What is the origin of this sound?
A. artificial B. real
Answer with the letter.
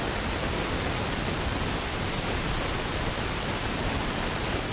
B